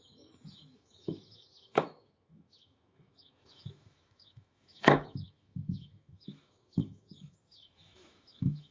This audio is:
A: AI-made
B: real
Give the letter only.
A